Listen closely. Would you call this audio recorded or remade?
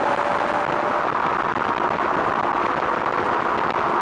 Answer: recorded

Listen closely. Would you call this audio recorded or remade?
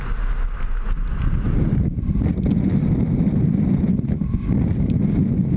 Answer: recorded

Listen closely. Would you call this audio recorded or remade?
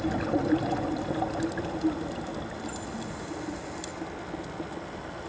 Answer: recorded